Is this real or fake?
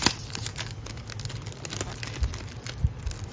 real